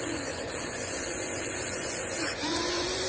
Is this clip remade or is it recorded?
remade